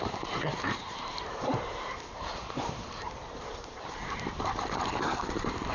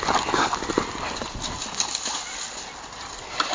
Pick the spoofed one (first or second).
first